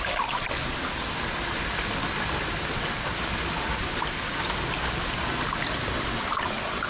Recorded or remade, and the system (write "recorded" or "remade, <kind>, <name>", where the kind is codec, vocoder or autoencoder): recorded